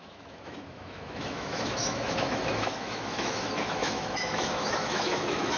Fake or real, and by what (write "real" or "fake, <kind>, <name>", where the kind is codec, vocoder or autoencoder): fake, autoencoder, DAC-VAE